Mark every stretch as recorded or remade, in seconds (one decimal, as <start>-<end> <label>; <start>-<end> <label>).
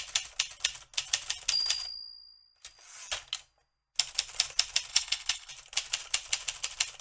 0.0-4.9 recorded; 4.9-5.5 remade; 5.5-7.0 recorded